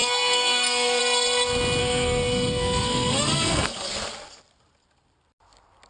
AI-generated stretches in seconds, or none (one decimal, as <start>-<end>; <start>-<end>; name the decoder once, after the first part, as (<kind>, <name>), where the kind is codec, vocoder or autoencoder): 0.0-1.0 (codec, SNAC); 1.8-3.9

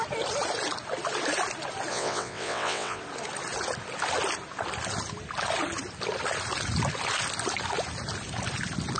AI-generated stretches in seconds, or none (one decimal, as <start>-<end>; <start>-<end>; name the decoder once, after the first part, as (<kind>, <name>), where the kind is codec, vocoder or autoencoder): 1.9-3.0 (vocoder, WaveNeXt)

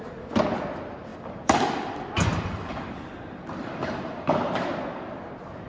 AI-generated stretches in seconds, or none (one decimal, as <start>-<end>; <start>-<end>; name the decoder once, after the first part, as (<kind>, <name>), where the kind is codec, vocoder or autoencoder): 1.1-4.5 (vocoder, BigVGAN v2)

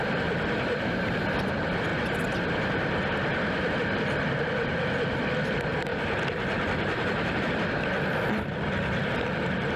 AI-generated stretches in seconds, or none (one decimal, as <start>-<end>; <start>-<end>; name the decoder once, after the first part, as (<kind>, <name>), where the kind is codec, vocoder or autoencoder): 0.0-1.9 (vocoder, BigVGAN v2); 3.7-9.8

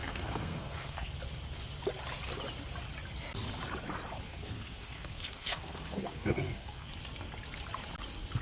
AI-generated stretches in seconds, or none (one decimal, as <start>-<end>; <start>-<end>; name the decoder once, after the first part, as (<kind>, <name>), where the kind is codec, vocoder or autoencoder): 0.0-1.1 (codec, SNAC); 4.3-6.9